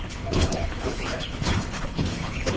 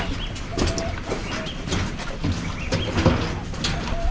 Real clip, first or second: second